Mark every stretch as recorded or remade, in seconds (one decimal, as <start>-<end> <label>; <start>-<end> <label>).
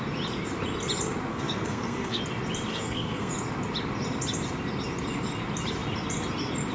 0.0-1.3 recorded; 1.3-2.2 remade; 2.2-2.7 recorded; 2.7-3.3 remade; 3.3-6.7 recorded